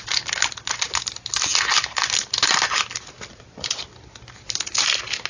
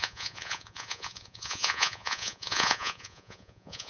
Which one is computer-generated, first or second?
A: second